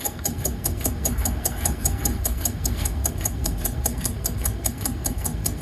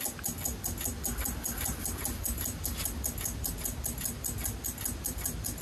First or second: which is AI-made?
first